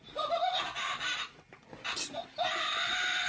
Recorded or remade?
recorded